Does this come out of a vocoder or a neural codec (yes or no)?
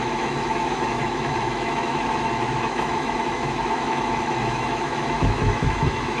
yes